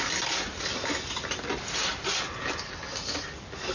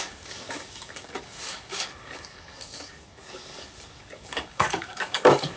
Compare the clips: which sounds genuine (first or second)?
first